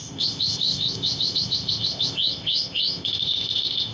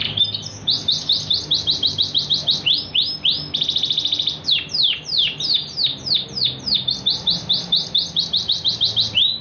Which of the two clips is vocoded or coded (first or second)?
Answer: first